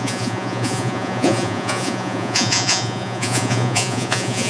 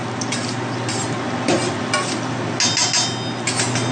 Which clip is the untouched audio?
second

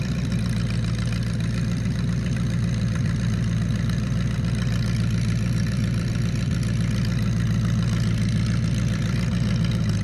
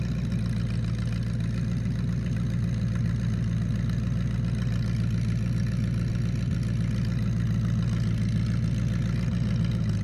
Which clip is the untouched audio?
second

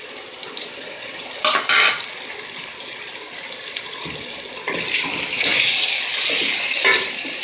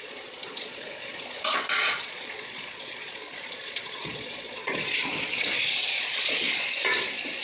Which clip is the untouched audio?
first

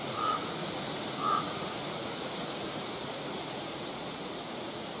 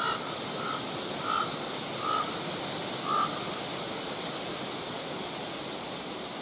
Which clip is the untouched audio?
second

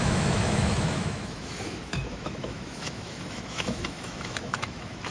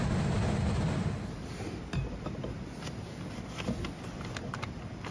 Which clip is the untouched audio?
second